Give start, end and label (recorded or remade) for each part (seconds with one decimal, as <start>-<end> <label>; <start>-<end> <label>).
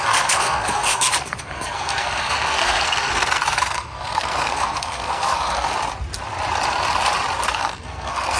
0.0-5.7 remade; 5.7-7.5 recorded; 7.5-8.4 remade